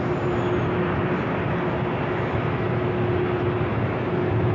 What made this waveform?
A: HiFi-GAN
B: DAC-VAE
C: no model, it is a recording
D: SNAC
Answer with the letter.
C